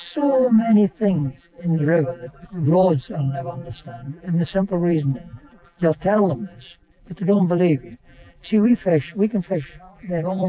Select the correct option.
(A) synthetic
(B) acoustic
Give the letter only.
A